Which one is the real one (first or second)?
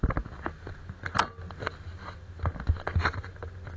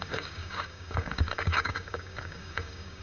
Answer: first